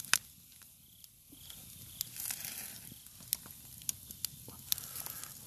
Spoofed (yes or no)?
no